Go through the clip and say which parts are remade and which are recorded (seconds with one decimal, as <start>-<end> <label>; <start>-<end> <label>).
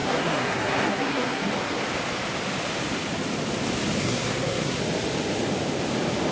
0.0-1.5 remade; 1.5-4.0 recorded; 4.0-4.8 remade; 4.8-6.3 recorded